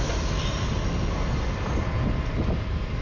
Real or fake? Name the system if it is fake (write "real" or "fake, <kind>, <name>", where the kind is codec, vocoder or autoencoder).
real